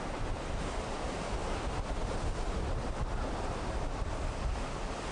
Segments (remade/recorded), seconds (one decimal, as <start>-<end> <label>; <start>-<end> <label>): 0.0-5.1 recorded

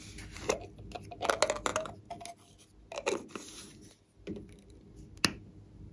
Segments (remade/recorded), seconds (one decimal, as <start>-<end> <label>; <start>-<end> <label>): 0.0-5.9 recorded